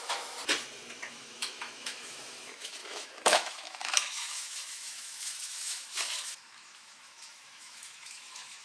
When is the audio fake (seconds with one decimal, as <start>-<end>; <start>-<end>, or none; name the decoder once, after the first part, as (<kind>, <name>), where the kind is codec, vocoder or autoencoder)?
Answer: 0.0-0.4 (autoencoder, DAC-VAE); 1.1-8.6